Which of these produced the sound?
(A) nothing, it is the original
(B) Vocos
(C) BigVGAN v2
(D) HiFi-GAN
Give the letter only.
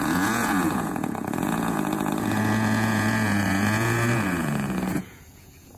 B